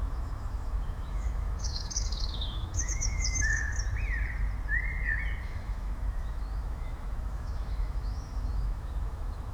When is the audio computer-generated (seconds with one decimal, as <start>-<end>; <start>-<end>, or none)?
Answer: 0.0-3.7; 5.4-9.5